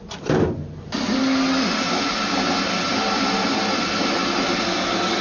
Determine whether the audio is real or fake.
real